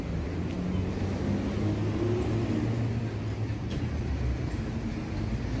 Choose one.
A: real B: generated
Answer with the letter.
A